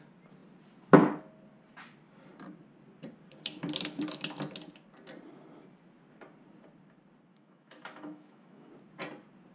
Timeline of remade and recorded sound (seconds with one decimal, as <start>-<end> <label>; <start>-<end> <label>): 0.0-7.3 recorded; 7.3-8.7 remade; 8.7-9.5 recorded

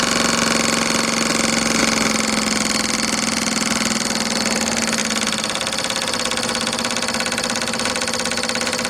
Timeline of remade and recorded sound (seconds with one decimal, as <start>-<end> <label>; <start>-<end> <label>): 0.0-8.9 recorded

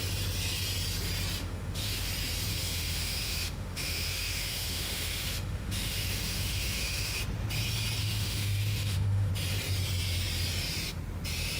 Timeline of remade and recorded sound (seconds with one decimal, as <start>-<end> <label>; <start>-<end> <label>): 0.0-1.4 recorded; 1.4-2.1 remade; 2.1-2.5 recorded; 2.5-7.2 remade; 7.2-8.0 recorded; 8.0-9.3 remade; 9.3-11.6 recorded

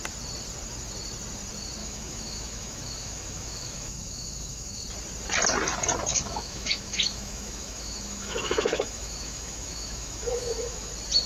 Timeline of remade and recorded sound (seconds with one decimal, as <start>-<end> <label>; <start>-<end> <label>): 0.0-1.8 recorded; 1.8-4.8 remade; 4.8-6.1 recorded; 6.1-10.9 remade; 10.9-11.3 recorded

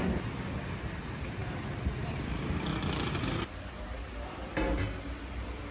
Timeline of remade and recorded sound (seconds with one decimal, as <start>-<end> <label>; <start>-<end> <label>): 0.0-5.7 recorded

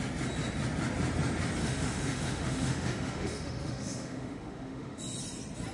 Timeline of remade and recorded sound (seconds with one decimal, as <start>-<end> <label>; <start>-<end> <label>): 0.0-1.6 recorded; 1.6-5.0 remade; 5.0-5.7 recorded

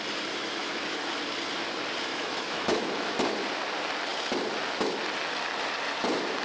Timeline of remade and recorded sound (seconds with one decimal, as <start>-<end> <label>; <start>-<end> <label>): 0.0-0.6 recorded; 0.6-1.1 remade; 1.1-2.1 recorded; 2.1-3.1 remade; 3.1-6.4 recorded

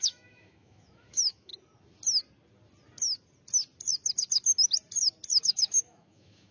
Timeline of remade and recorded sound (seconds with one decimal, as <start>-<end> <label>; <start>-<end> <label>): 0.0-1.5 remade; 1.5-5.4 recorded; 5.4-6.5 remade